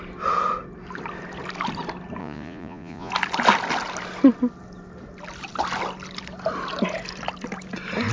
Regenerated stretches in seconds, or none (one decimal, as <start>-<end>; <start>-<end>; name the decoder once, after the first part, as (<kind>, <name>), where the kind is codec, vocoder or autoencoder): 2.2-3.1 (vocoder, Vocos)